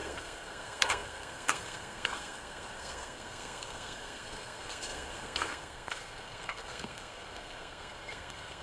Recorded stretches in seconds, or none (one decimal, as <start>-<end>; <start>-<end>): none